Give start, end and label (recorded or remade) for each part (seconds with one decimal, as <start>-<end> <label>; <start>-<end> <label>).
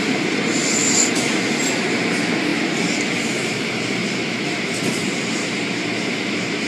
0.0-0.6 remade; 0.6-1.7 recorded; 1.7-6.7 remade